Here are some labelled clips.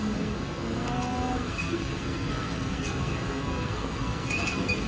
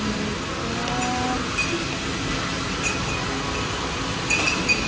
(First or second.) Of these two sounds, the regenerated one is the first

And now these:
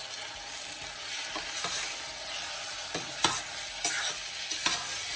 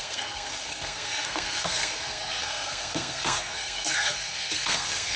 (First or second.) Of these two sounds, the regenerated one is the second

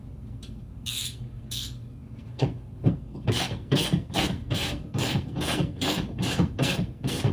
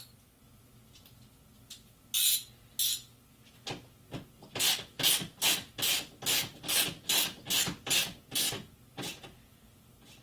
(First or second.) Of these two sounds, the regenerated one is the first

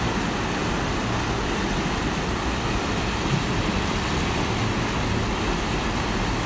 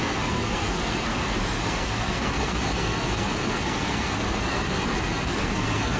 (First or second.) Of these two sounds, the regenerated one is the second